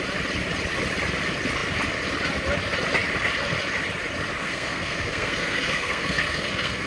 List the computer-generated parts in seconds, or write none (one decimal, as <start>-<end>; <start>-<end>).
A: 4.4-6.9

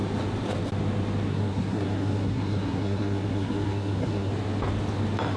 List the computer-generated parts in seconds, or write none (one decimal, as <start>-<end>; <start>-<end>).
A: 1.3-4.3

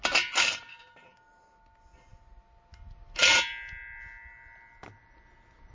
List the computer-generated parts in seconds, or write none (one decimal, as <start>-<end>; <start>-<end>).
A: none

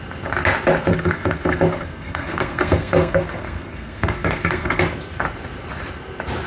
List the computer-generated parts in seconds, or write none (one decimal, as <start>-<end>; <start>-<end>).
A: 0.9-4.8

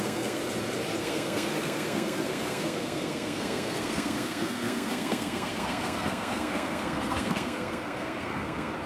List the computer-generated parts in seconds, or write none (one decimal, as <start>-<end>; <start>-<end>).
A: 0.0-0.4; 1.0-8.9

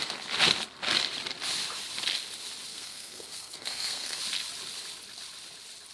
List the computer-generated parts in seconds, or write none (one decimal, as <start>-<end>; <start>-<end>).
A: 2.7-4.2